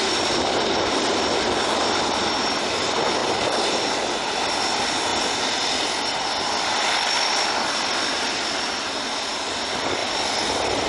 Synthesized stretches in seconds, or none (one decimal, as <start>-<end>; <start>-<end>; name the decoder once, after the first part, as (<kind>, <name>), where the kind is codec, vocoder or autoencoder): 3.2-3.9 (vocoder, BigVGAN v2); 5.1-8.7; 10.0-10.9